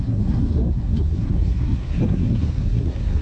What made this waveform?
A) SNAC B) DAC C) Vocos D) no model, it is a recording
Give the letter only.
A